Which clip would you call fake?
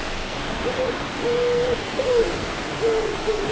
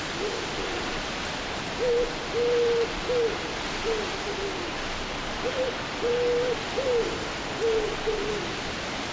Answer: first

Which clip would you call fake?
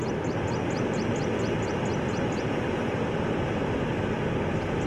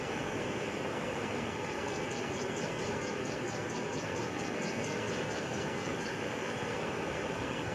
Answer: second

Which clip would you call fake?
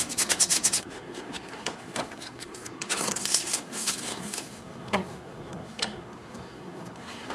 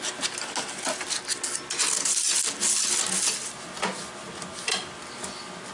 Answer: first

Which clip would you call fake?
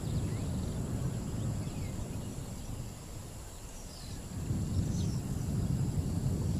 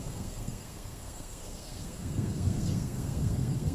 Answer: second